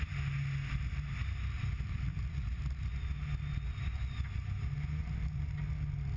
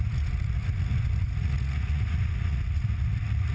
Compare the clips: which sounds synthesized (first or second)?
second